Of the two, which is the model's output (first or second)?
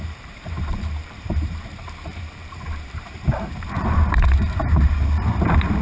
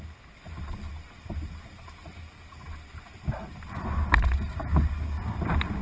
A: first